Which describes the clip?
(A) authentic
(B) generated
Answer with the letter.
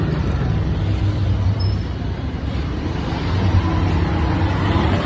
A